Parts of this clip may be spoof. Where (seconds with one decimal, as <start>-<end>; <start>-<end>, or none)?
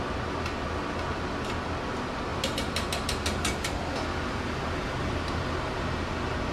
none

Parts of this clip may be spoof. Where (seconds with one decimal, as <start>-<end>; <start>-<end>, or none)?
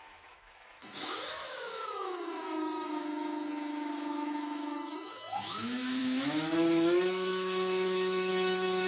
0.0-8.9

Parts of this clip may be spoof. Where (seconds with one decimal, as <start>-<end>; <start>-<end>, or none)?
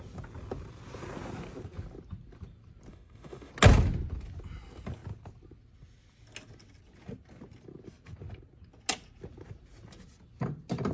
2.9-3.5